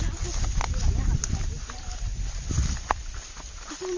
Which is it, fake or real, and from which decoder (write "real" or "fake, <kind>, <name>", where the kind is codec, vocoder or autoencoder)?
real